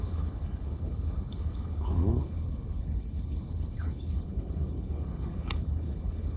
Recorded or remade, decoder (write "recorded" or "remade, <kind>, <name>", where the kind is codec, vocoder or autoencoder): remade, codec, HILCodec